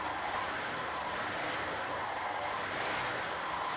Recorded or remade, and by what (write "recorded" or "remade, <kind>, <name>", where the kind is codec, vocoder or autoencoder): recorded